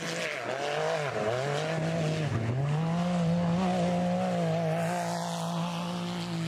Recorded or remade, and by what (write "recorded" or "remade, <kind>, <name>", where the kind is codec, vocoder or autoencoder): recorded